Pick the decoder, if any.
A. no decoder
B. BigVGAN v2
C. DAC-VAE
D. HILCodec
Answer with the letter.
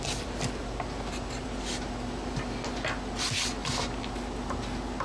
A